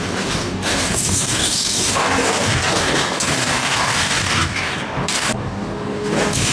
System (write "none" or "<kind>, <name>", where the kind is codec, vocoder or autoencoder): codec, DAC